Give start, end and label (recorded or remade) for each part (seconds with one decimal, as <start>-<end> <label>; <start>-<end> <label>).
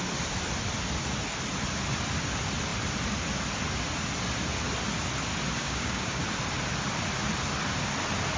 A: 0.0-5.6 recorded; 5.6-6.2 remade; 6.2-8.4 recorded